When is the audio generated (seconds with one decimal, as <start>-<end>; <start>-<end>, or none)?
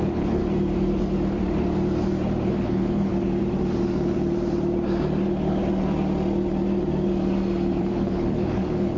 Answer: 0.0-0.4; 2.5-3.1; 7.8-9.0